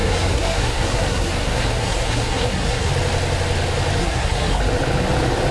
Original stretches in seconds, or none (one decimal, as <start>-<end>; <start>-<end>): 2.9-4.0; 4.6-5.5